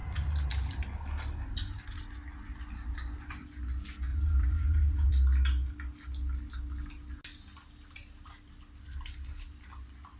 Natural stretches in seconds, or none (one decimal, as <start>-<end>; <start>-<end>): 0.0-4.1; 5.1-10.2